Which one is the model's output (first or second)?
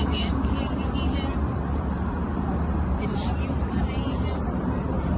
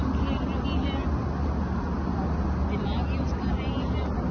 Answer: first